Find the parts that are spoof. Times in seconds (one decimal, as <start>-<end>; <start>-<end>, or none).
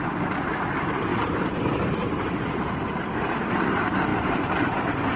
1.1-3.4; 4.1-5.2